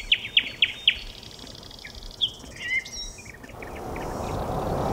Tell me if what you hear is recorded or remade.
recorded